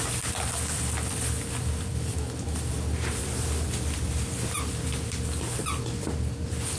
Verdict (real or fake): real